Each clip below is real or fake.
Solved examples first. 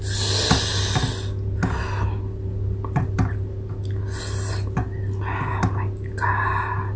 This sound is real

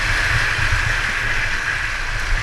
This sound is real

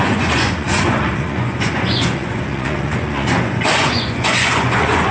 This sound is fake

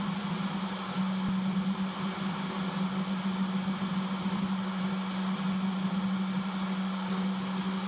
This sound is real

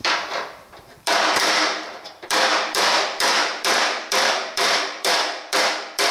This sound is fake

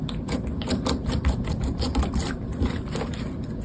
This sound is real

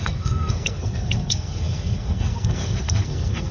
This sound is fake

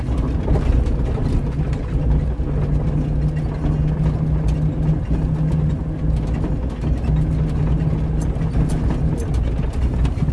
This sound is real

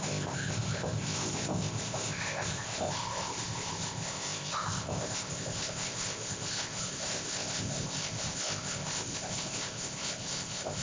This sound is fake